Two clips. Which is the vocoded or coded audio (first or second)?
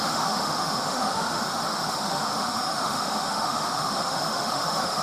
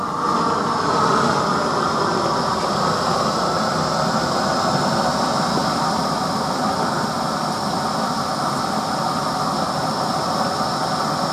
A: first